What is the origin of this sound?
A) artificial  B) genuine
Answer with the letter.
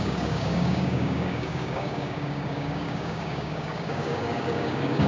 A